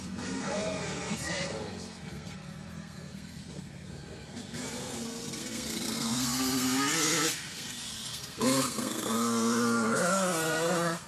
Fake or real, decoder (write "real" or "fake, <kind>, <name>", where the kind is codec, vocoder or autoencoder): fake, codec, SNAC